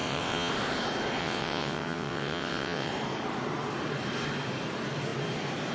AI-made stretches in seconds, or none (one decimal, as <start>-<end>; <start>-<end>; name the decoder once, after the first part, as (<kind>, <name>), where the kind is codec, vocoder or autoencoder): 0.0-0.5 (vocoder, WaveNeXt); 1.2-2.9